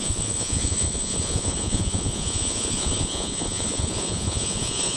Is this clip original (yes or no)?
no